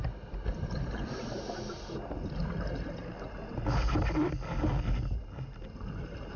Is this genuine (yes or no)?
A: yes